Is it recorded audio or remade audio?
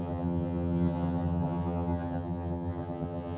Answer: remade